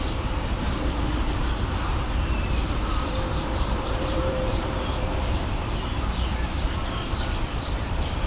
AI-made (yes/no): yes